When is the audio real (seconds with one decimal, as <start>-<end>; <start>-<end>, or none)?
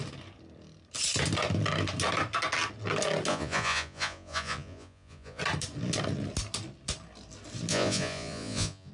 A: 0.0-3.3; 5.4-7.7